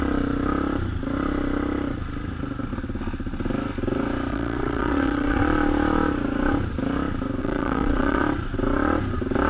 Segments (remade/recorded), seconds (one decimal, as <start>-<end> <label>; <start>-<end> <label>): 0.0-4.3 recorded; 4.3-5.4 remade; 5.4-7.4 recorded; 7.4-8.2 remade; 8.2-9.5 recorded

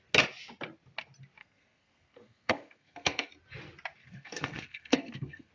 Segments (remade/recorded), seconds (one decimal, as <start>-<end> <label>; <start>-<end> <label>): 0.0-1.4 recorded; 1.4-3.3 remade; 3.3-4.0 recorded; 4.0-5.5 remade

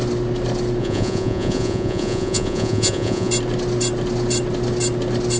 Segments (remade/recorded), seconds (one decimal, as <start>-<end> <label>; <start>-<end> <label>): 0.0-0.8 recorded; 0.8-3.3 remade; 3.3-5.4 recorded

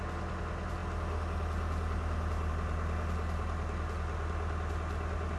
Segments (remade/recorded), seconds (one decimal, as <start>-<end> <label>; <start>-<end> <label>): 0.0-5.4 recorded

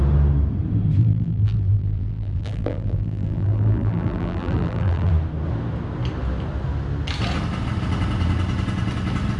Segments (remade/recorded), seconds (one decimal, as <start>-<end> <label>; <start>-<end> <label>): 0.0-1.0 recorded; 1.0-5.1 remade; 5.1-9.4 recorded

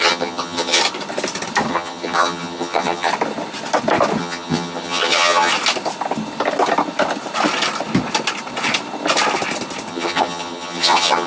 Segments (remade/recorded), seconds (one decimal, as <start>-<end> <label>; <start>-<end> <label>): 0.0-0.8 remade; 0.8-1.7 recorded; 1.7-3.1 remade; 3.1-4.2 recorded; 4.2-5.5 remade; 5.5-9.9 recorded; 9.9-11.3 remade